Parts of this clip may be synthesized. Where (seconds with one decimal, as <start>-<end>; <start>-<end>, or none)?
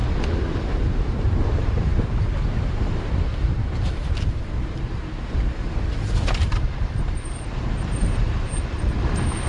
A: 0.6-9.5